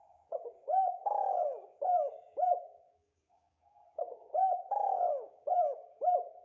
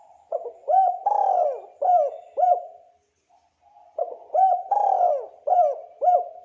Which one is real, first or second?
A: second